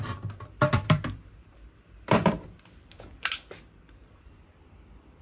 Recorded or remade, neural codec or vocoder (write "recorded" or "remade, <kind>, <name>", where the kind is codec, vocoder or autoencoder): remade, vocoder, BigVGAN v2